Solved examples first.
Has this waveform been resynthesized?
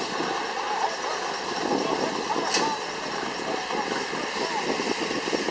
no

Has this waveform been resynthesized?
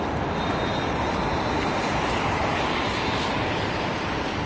no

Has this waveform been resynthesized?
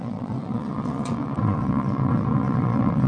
yes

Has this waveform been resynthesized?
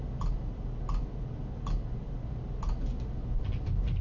no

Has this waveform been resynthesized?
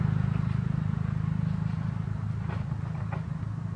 no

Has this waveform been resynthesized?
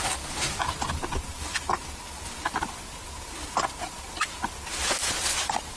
no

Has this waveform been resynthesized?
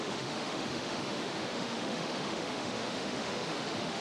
yes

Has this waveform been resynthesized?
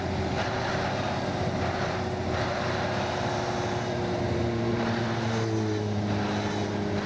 no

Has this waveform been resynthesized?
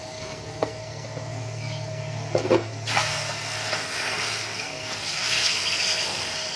yes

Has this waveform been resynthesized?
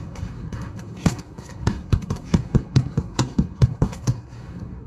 yes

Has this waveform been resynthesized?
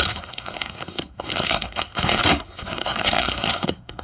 yes